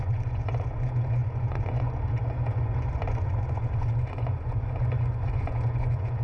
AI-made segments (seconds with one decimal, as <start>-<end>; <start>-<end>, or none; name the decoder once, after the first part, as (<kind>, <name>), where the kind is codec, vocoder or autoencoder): 0.0-6.2 (vocoder, Vocos)